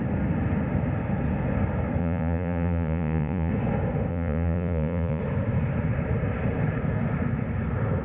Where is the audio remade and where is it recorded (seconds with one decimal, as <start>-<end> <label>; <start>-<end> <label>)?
0.0-2.0 recorded; 2.0-3.5 remade; 3.5-4.1 recorded; 4.1-5.2 remade; 5.2-8.0 recorded